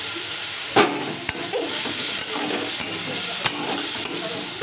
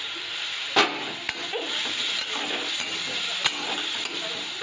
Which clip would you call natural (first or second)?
second